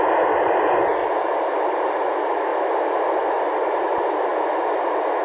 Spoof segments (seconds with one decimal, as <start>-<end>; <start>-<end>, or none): 1.0-2.0

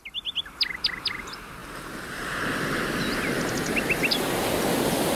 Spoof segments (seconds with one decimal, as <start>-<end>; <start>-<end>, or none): none

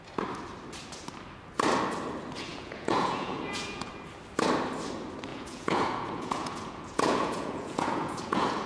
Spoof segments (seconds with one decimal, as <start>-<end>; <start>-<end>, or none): 2.5-3.9; 5.3-8.7

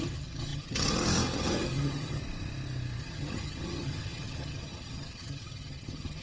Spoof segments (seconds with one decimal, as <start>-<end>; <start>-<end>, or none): 0.0-2.2; 3.0-6.2

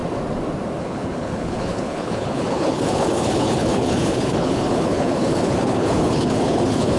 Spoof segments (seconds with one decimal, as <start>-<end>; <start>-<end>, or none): 0.8-7.0

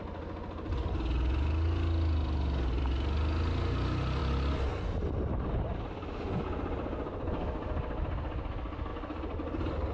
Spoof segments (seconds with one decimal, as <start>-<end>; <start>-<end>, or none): none

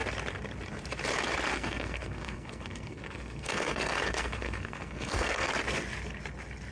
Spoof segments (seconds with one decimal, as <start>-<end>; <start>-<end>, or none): 1.5-5.5

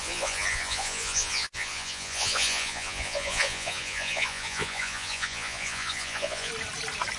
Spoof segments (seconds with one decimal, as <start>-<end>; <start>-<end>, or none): 0.0-6.5